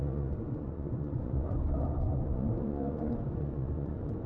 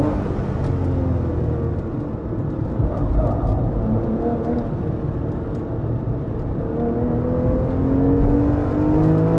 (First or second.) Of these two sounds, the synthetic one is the first